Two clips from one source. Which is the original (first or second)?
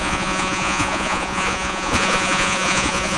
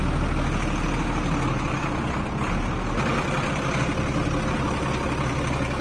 second